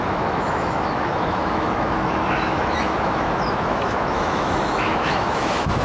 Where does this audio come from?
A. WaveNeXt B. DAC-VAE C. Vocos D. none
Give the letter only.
B